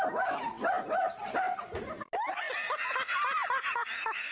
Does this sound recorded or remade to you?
recorded